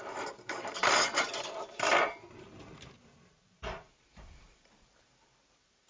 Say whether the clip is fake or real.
fake